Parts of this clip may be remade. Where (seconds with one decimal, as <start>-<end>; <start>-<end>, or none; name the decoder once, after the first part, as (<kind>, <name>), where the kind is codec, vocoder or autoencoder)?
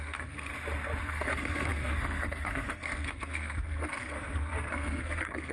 0.0-0.5 (codec, SNAC); 1.0-5.5